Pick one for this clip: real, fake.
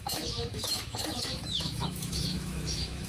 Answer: fake